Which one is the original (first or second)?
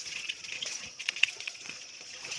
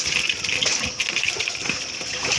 second